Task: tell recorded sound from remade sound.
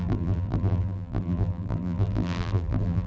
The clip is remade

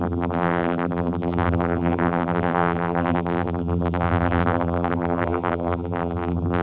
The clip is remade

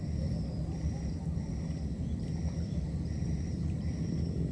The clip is remade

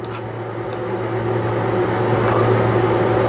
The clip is recorded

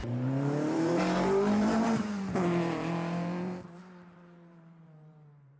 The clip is remade